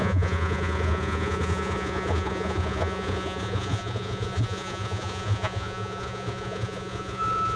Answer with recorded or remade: remade